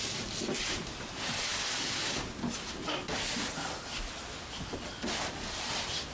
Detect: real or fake real